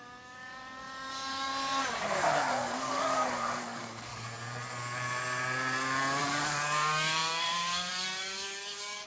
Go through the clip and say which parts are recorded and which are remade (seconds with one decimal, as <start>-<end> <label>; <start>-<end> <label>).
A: 0.0-1.5 remade; 1.5-2.0 recorded; 2.0-4.1 remade; 4.1-6.2 recorded; 6.2-9.1 remade